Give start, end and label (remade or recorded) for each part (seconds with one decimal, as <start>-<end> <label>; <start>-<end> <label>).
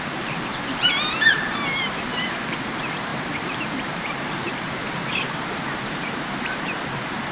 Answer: 0.0-7.3 remade